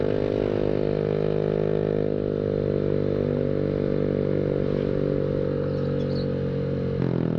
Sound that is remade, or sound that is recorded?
recorded